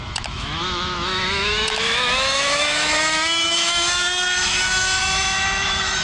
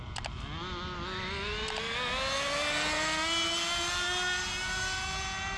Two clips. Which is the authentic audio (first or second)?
second